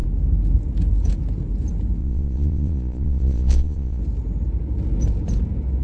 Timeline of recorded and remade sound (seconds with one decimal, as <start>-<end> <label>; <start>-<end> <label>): 0.0-2.0 recorded; 2.0-4.0 remade; 4.0-5.8 recorded